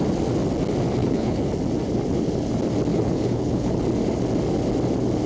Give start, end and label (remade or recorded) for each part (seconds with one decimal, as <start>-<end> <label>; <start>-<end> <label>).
0.0-1.0 recorded; 1.0-1.5 remade; 1.5-2.9 recorded; 2.9-3.8 remade; 3.8-5.3 recorded